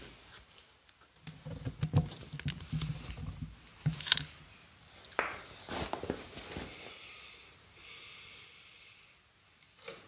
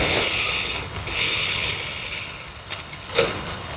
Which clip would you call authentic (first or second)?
first